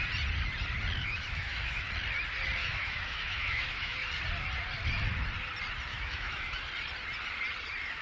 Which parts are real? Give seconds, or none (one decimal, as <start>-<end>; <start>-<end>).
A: 0.0-1.0; 1.9-2.6; 4.1-5.9; 6.6-8.0